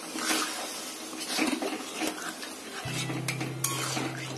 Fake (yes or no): no